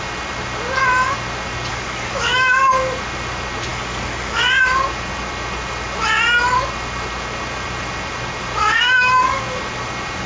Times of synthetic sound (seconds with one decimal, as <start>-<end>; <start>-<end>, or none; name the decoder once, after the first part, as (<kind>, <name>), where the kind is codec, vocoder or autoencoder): 1.7-2.6 (codec, DAC); 3.7-4.4; 8.6-9.4